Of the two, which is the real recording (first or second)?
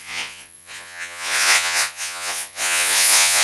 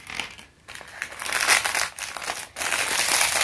second